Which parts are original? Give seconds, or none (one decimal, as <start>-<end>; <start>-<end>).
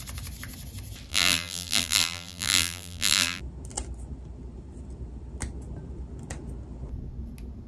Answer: 0.0-1.1; 3.4-7.7